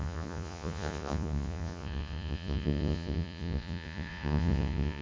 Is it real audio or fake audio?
fake